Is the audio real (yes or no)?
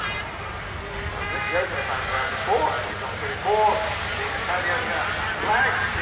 yes